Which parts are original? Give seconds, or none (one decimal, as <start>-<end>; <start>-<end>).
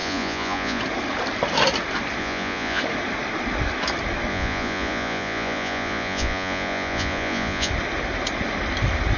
0.8-2.2; 2.8-4.3; 7.7-9.2